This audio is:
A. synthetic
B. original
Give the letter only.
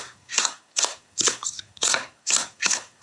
A